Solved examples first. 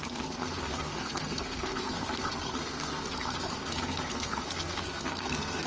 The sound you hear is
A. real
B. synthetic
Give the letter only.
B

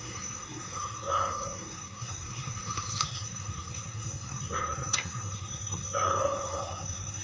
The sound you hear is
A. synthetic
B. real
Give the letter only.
A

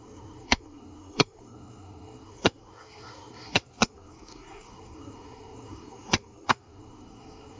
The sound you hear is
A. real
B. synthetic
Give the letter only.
B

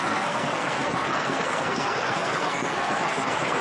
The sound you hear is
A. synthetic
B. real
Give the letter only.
A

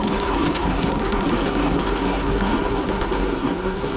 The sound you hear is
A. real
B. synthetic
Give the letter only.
B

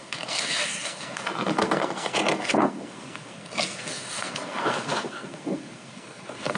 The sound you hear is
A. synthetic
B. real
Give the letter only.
A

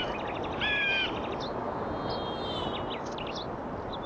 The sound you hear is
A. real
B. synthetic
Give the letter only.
A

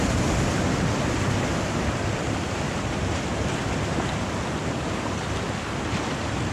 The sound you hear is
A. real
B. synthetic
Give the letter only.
A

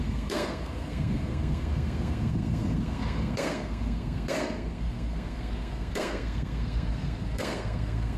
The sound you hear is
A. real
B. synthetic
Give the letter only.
B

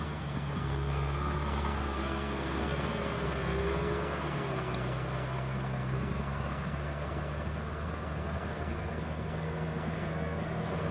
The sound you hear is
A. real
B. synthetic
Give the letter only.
B